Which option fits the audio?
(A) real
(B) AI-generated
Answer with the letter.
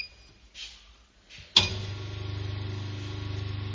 A